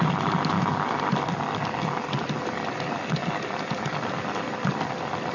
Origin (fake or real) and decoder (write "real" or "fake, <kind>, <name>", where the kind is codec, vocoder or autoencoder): real